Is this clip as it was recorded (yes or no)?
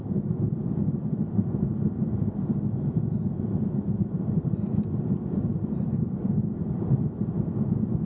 no